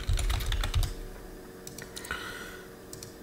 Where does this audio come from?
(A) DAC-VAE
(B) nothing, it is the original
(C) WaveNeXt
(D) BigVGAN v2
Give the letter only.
B